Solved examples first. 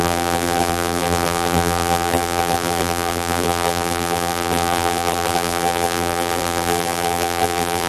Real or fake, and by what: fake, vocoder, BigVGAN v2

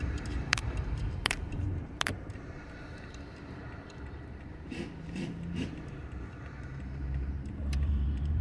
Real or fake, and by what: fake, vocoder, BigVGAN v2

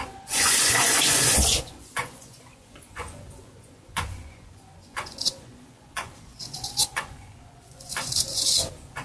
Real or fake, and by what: fake, vocoder, Vocos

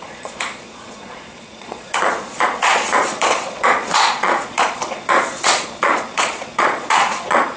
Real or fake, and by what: fake, vocoder, Vocos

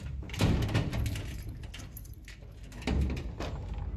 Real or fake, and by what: real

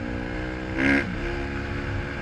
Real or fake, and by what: real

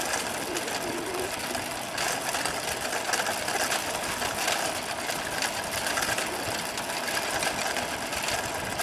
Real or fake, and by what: real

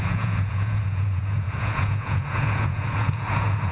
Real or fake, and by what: fake, vocoder, Vocos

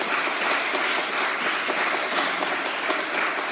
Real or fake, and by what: real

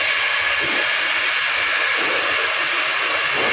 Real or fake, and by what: real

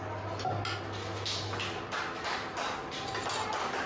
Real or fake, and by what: real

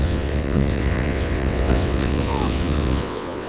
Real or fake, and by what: fake, vocoder, WaveNeXt